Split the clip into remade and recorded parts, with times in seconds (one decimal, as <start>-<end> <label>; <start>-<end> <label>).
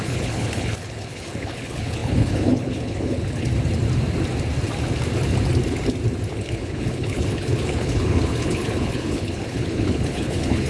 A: 0.0-3.5 remade; 3.5-6.3 recorded; 6.3-10.7 remade